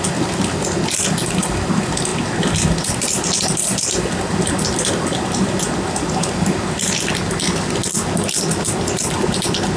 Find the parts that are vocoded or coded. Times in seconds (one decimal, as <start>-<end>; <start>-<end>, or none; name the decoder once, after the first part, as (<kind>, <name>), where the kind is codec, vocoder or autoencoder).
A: none